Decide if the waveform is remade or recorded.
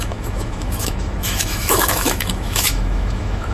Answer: remade